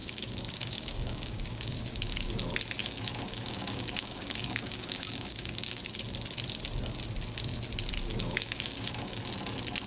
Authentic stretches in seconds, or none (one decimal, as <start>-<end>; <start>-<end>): 2.3-2.8; 5.8-8.1; 9.2-9.9